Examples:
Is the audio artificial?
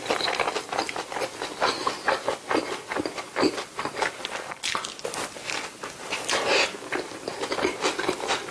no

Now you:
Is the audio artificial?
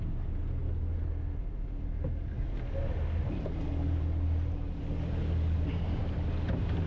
no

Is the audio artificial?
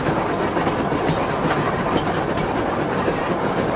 no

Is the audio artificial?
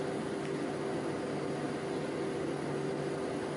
no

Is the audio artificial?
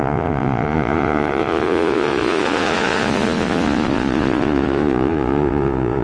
yes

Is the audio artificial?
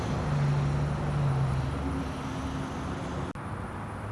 no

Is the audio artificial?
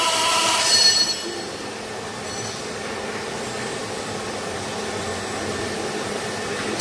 no